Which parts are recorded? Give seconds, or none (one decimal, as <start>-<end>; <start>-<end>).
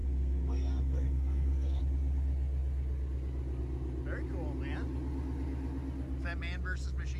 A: 1.8-7.2